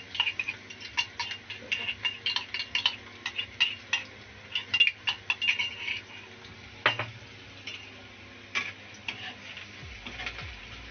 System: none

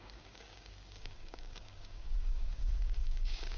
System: codec, DAC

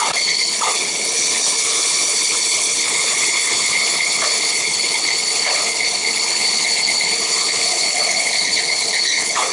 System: codec, HILCodec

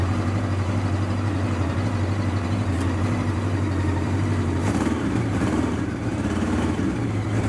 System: vocoder, BigVGAN v2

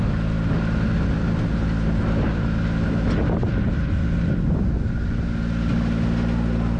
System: none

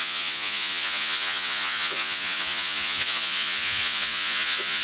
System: vocoder, Vocos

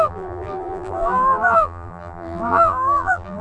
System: vocoder, BigVGAN v2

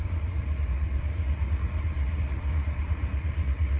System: vocoder, Vocos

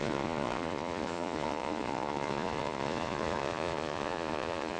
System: vocoder, Vocos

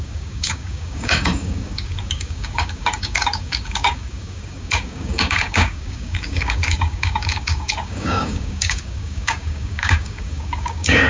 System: codec, DAC